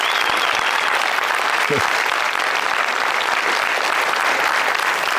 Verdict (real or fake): real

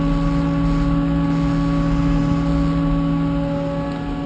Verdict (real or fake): real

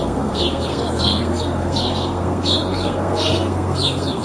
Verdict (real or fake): fake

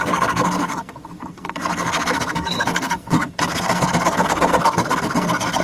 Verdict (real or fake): fake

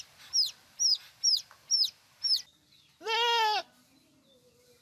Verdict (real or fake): real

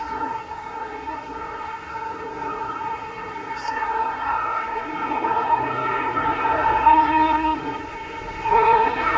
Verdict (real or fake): fake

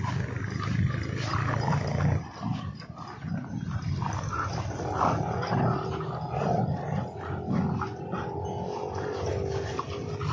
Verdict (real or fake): real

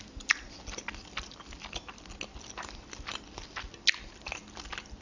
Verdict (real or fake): real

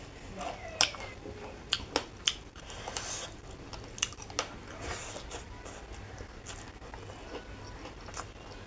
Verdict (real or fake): real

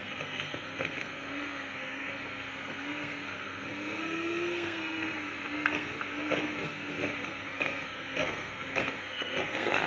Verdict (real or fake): fake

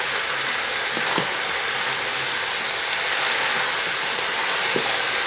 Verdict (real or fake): real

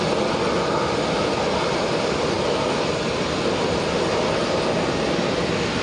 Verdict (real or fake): real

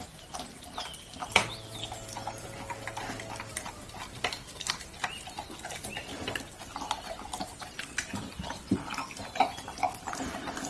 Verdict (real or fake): real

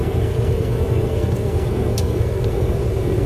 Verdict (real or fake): fake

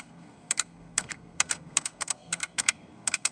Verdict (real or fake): fake